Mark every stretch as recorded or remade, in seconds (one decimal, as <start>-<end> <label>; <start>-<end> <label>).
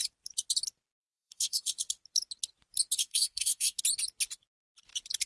0.0-1.0 recorded; 1.0-1.8 remade; 1.8-3.0 recorded; 3.0-3.8 remade; 3.8-5.3 recorded